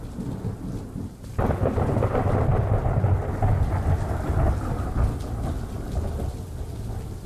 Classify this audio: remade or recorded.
recorded